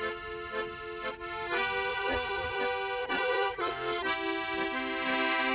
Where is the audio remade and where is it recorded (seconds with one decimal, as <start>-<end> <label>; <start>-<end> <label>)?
0.0-1.9 recorded; 1.9-2.6 remade; 2.6-3.0 recorded; 3.0-3.7 remade; 3.7-5.5 recorded